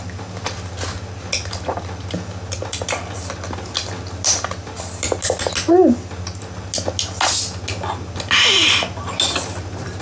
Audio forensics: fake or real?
real